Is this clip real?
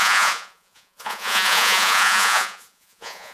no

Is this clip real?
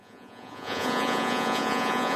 no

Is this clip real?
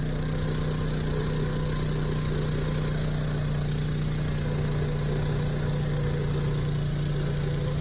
yes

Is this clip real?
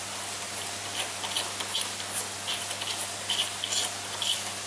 yes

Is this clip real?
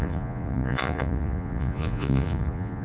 no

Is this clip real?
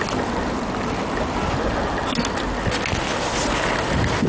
yes